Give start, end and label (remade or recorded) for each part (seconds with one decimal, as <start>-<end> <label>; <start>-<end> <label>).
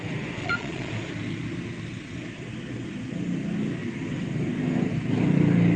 0.0-0.4 recorded; 0.4-0.9 remade; 0.9-5.8 recorded